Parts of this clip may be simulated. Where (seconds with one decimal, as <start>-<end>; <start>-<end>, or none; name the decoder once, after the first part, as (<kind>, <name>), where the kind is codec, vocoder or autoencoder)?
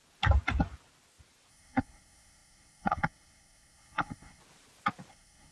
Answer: 1.5-4.4 (codec, SNAC); 5.1-5.5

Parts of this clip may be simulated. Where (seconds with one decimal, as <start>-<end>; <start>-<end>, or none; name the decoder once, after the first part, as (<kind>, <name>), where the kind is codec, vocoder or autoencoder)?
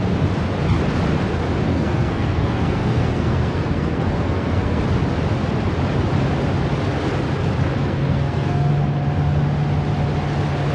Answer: 1.7-4.8 (codec, SNAC); 7.8-8.7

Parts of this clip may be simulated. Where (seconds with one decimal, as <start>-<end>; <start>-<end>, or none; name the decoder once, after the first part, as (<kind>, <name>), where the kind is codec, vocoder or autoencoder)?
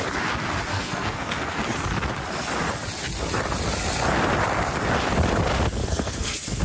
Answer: 0.7-1.6 (codec, SNAC); 5.8-6.6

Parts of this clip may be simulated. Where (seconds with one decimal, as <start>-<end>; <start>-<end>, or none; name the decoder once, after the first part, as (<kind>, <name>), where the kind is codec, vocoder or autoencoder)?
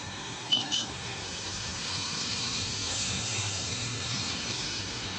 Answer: 0.0-5.2 (codec, SNAC)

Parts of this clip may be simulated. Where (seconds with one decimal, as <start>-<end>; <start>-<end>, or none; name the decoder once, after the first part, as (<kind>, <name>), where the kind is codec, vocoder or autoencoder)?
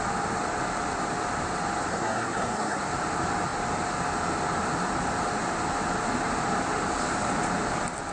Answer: 1.9-2.8 (codec, SNAC)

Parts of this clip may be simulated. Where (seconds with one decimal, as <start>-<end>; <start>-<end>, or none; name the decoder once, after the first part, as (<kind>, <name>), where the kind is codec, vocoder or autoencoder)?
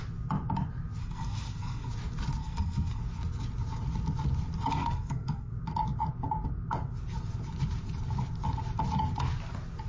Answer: 1.0-1.9 (codec, SNAC); 2.4-3.0; 4.8-5.5